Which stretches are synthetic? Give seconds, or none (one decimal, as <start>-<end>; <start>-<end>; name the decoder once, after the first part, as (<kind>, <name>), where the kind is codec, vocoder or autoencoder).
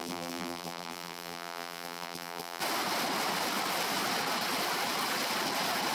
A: 0.0-2.6 (vocoder, BigVGAN v2)